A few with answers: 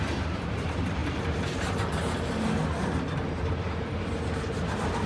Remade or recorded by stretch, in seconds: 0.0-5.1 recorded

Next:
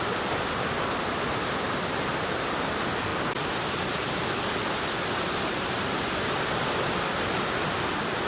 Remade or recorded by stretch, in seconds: 0.0-8.3 recorded

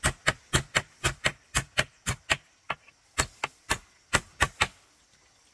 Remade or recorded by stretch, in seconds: 0.0-5.5 recorded